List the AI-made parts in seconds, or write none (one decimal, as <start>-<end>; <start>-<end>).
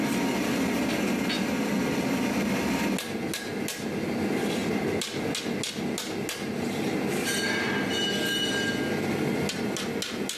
none